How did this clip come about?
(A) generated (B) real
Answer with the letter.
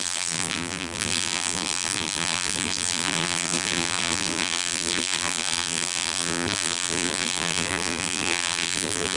A